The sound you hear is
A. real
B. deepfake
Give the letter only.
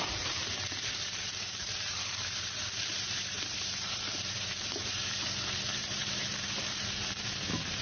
B